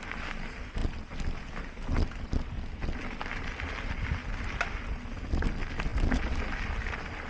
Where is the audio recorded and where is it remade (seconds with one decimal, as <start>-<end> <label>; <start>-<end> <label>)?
0.0-7.3 recorded